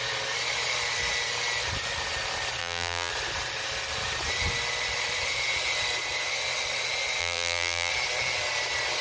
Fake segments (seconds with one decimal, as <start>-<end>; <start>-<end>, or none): 2.6-3.1; 7.2-7.9